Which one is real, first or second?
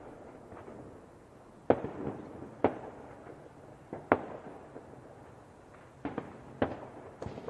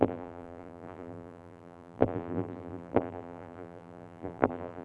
first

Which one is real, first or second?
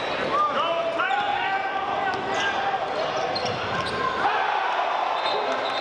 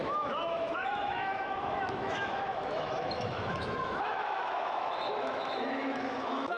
first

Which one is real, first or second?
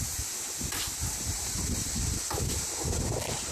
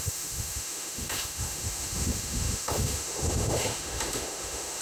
first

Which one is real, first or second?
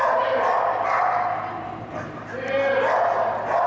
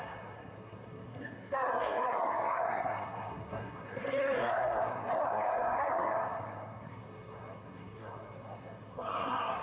first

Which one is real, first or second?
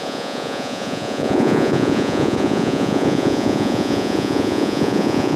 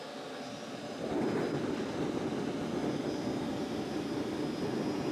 second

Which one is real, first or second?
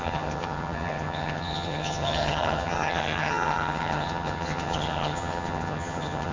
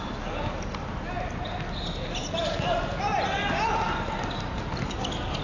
second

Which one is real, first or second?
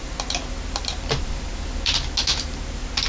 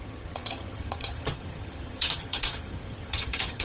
first